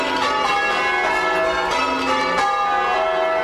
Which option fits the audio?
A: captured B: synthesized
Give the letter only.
A